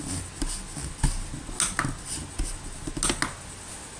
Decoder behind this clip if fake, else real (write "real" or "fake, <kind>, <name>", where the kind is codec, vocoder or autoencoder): real